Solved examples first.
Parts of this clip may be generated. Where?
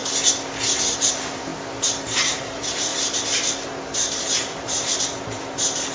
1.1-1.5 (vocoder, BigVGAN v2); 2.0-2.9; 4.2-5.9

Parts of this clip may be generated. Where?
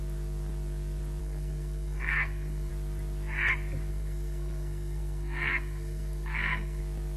1.2-2.7 (codec, SNAC); 3.9-6.8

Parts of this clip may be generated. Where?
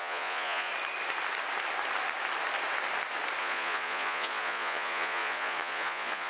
0.0-0.7 (vocoder, Vocos); 3.4-6.3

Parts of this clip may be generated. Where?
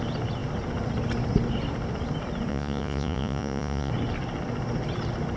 2.5-3.9 (vocoder, Vocos)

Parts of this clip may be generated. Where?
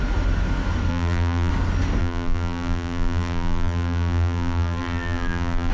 0.9-1.5 (vocoder, BigVGAN v2); 2.0-5.7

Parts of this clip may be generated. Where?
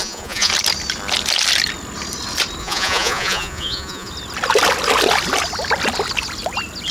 0.0-0.5 (vocoder, Vocos); 2.6-4.1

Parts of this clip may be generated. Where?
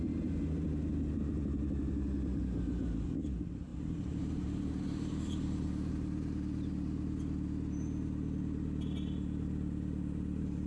3.7-5.9 (vocoder, BigVGAN v2)